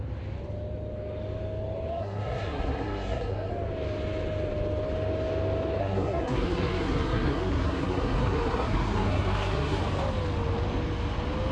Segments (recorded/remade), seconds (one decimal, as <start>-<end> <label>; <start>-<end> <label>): 0.0-1.9 recorded; 1.9-3.5 remade; 3.5-5.8 recorded; 5.8-9.8 remade; 9.8-11.5 recorded